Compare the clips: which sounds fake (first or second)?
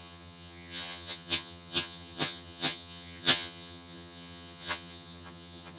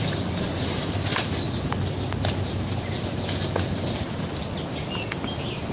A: first